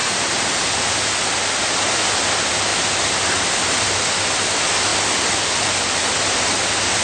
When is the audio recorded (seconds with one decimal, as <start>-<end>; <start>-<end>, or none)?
1.0-2.7; 4.0-7.0